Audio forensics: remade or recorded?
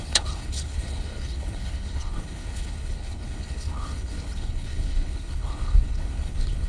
remade